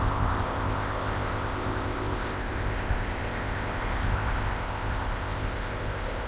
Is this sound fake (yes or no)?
yes